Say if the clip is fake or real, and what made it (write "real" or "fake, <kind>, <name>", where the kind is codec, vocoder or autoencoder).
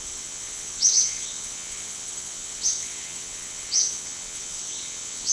fake, vocoder, WaveNeXt